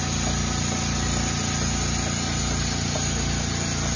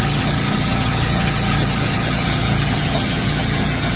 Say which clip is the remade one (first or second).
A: second